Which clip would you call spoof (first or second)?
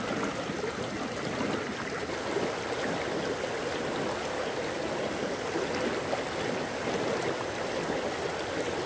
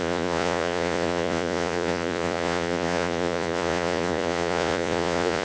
second